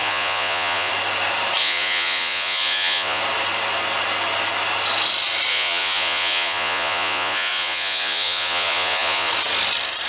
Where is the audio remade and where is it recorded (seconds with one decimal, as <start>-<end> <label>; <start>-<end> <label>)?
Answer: 0.0-0.9 remade; 0.9-1.6 recorded; 1.6-3.2 remade; 3.2-5.5 recorded; 5.5-9.3 remade; 9.3-10.1 recorded